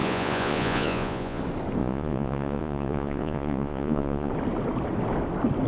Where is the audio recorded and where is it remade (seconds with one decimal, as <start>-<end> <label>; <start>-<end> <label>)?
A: 0.0-1.4 remade; 1.4-1.8 recorded; 1.8-4.3 remade; 4.3-5.7 recorded